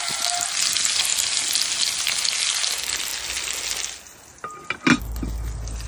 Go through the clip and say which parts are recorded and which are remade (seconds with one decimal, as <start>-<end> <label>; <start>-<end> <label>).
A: 0.0-5.9 recorded

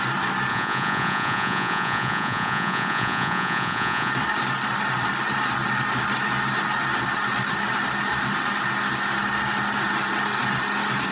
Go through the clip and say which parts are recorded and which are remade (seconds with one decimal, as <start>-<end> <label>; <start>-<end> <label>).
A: 0.0-0.5 recorded; 0.5-4.1 remade; 4.1-11.1 recorded

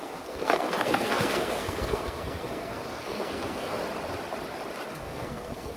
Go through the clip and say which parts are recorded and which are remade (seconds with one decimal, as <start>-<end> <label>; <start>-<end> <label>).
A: 0.0-3.8 remade; 3.8-4.9 recorded; 4.9-5.8 remade